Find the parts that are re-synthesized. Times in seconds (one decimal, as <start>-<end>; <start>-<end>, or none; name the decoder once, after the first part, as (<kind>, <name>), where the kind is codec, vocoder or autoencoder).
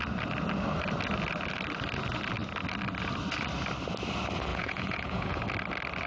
4.5-5.4 (vocoder, Vocos)